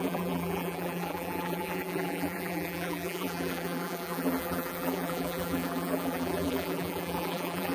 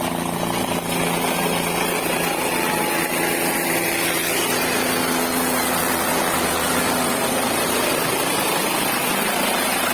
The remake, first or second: first